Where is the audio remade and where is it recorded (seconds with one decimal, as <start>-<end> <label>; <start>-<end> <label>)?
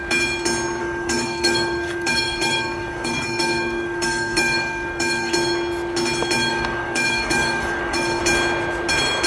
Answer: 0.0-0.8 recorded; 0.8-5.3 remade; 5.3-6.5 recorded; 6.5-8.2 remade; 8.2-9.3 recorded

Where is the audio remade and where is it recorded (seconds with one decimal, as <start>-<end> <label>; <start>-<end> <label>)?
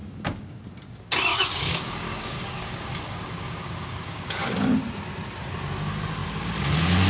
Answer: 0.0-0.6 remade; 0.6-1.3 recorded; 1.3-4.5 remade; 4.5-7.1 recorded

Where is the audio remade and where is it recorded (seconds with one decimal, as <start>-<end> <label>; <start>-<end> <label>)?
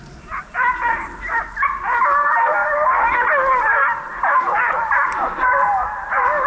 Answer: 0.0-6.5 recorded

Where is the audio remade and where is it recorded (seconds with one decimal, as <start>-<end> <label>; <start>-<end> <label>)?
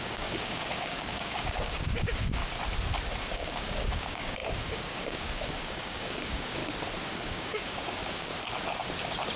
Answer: 0.0-2.4 remade; 2.4-3.2 recorded; 3.2-6.6 remade; 6.6-7.1 recorded; 7.1-8.3 remade; 8.3-9.4 recorded